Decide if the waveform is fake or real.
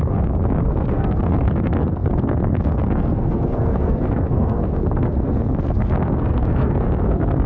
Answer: fake